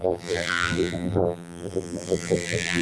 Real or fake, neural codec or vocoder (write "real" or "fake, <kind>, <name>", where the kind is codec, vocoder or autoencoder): fake, vocoder, BigVGAN v2